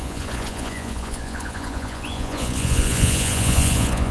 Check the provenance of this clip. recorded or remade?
remade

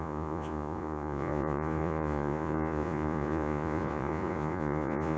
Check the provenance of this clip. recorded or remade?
remade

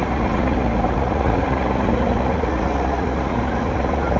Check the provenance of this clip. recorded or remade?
remade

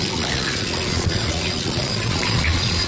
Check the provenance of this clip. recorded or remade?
remade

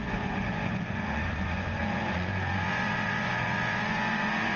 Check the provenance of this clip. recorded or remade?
remade